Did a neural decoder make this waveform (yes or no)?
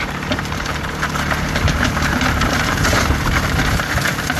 yes